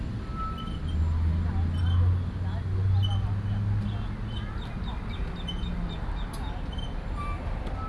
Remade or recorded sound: recorded